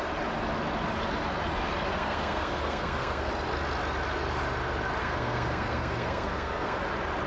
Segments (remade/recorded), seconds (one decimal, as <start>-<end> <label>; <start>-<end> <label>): 0.0-1.9 recorded; 1.9-3.3 remade; 3.3-5.0 recorded; 5.0-6.8 remade; 6.8-7.3 recorded